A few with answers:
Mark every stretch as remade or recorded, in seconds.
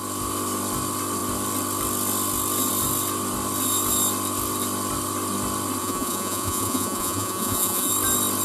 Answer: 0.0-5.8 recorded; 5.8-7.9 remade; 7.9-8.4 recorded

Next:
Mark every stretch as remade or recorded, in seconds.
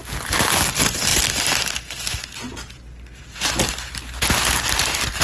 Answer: 0.0-5.2 recorded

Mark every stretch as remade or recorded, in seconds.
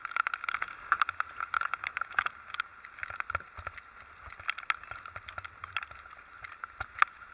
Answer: 0.0-7.3 recorded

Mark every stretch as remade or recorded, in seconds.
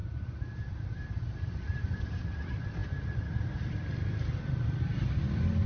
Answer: 0.0-5.7 remade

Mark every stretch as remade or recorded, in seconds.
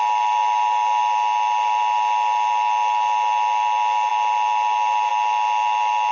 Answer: 0.0-6.1 recorded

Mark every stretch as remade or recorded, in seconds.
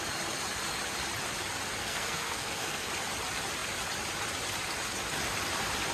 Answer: 0.0-1.8 recorded; 1.8-2.9 remade; 2.9-5.9 recorded